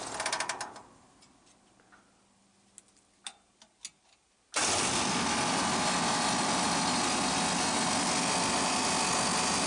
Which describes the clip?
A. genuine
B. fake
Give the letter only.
A